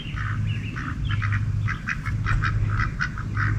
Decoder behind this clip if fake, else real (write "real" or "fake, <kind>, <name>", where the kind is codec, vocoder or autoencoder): real